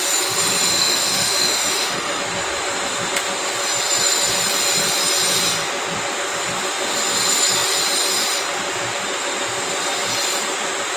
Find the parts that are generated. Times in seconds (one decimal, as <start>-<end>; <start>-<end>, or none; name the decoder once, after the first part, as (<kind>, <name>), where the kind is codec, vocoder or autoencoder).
0.7-2.2 (autoencoder, DAC-VAE)